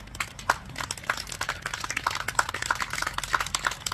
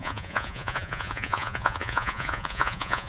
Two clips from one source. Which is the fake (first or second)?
second